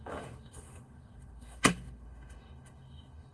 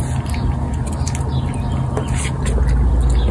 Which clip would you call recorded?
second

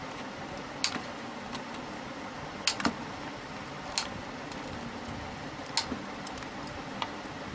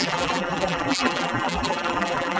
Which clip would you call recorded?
first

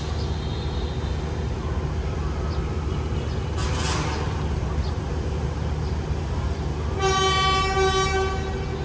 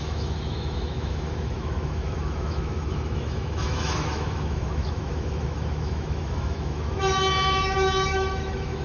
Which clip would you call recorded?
first